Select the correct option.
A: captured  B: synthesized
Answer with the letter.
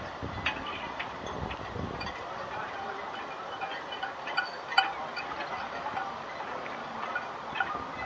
A